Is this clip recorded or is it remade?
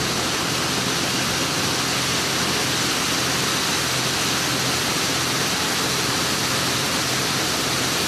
recorded